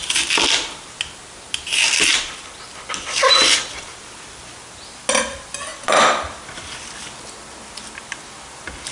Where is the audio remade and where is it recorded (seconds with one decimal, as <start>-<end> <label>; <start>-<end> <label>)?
0.0-2.1 recorded; 2.1-4.5 remade; 4.5-5.7 recorded; 5.7-7.0 remade; 7.0-8.9 recorded